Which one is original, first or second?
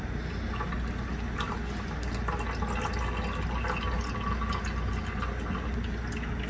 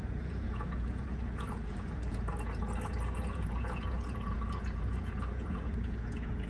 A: first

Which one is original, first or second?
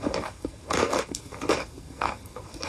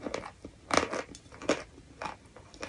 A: second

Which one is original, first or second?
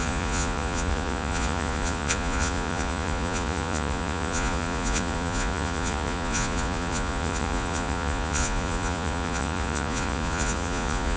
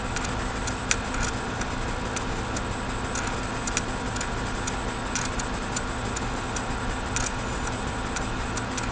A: second